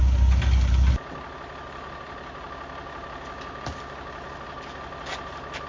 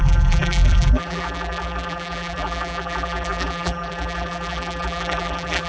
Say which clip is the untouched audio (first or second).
first